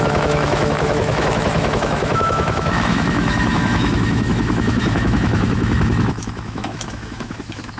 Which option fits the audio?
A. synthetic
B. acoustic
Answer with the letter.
A